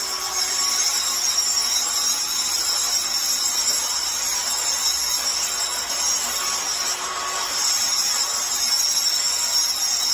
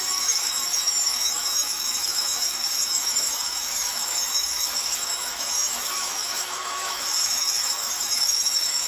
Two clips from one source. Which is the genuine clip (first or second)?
first